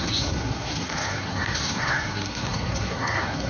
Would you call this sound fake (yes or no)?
yes